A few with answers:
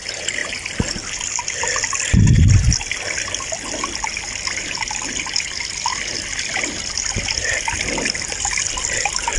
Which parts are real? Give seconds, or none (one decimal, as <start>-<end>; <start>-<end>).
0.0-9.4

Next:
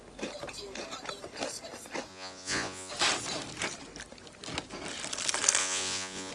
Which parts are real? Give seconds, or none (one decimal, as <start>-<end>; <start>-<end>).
0.0-2.1; 2.9-5.6

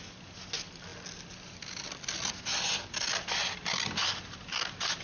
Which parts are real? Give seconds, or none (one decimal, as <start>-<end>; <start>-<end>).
0.0-5.0

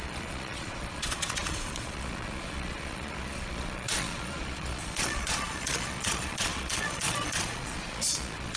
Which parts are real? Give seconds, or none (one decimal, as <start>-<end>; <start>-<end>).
none